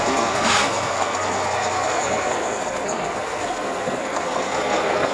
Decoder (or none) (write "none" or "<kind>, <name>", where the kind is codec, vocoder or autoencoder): codec, SNAC